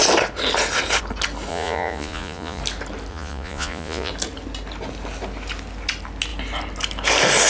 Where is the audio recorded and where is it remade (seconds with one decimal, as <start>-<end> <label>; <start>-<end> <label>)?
0.0-1.5 recorded; 1.5-2.6 remade; 2.6-3.1 recorded; 3.1-4.1 remade; 4.1-7.5 recorded

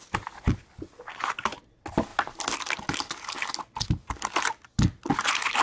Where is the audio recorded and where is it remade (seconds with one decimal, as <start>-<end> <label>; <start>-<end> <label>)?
0.0-5.6 recorded